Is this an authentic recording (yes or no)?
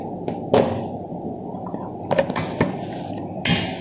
yes